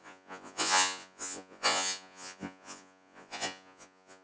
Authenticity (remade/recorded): remade